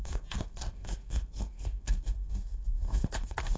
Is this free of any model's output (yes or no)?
no